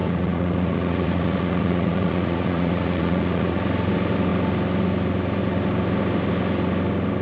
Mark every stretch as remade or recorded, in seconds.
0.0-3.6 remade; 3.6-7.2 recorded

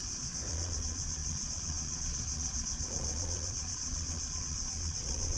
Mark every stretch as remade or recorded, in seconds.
0.0-0.5 recorded; 0.5-5.4 remade